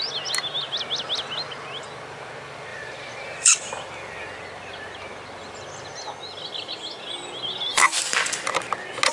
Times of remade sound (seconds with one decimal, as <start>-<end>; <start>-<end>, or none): 2.7-4.4; 7.7-8.5